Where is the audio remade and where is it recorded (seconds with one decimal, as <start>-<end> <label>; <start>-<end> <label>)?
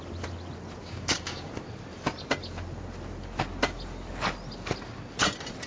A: 0.0-0.8 recorded; 0.8-1.5 remade; 1.5-5.7 recorded